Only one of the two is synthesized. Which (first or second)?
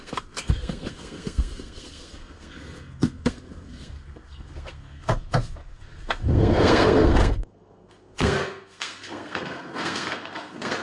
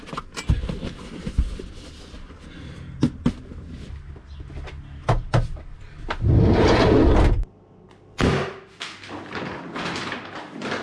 first